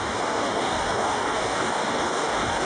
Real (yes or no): no